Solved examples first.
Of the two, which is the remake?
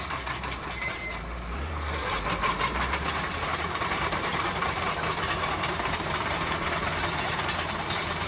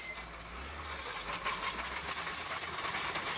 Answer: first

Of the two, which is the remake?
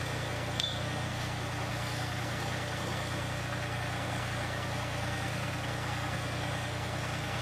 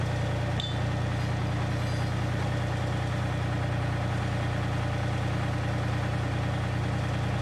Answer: first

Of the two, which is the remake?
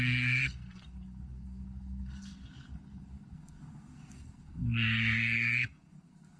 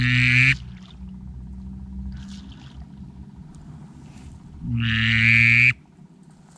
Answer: first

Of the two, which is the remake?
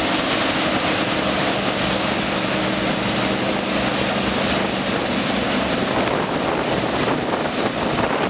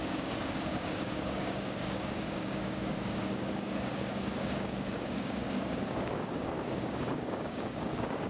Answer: second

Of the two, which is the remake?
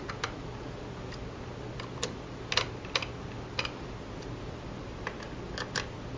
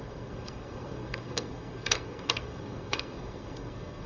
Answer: second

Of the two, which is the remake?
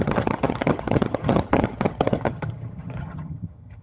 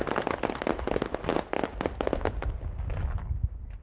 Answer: first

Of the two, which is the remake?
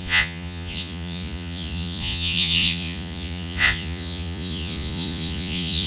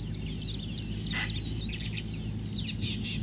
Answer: first